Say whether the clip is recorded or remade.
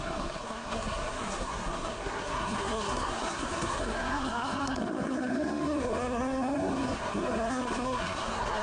remade